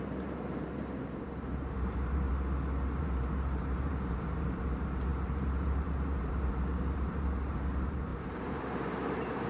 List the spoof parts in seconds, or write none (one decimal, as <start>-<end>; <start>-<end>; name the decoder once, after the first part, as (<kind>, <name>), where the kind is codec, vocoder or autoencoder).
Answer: 0.0-2.3 (vocoder, BigVGAN v2); 3.0-9.5